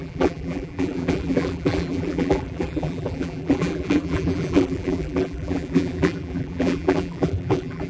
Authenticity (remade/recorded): remade